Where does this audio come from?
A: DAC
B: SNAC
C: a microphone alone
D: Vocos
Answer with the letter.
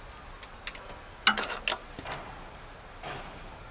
C